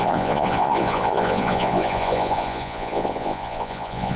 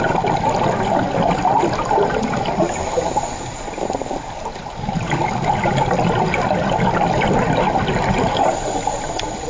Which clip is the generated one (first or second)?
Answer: first